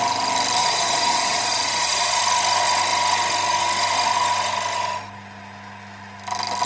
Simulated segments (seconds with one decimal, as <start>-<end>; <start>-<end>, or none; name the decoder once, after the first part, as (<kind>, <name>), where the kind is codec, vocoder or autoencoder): 0.6-2.2 (vocoder, Vocos)